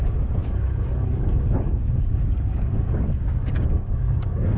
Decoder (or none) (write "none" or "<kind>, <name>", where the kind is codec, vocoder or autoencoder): codec, DAC